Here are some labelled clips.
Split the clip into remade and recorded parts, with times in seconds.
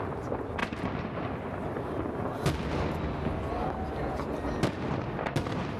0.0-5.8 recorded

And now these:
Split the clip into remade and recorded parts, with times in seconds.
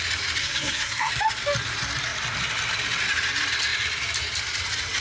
0.0-0.4 recorded; 0.4-1.1 remade; 1.1-5.0 recorded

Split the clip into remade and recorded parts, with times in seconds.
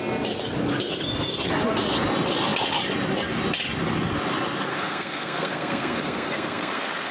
0.0-4.7 recorded; 4.7-7.1 remade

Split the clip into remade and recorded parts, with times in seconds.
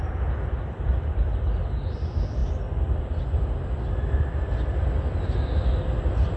0.0-6.4 recorded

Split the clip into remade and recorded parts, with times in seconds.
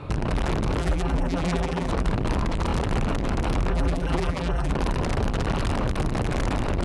0.0-0.8 recorded; 0.8-1.9 remade; 1.9-3.7 recorded; 3.7-4.7 remade; 4.7-6.8 recorded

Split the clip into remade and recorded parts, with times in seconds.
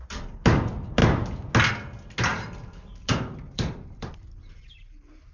0.0-2.3 recorded; 2.3-4.1 remade; 4.1-5.3 recorded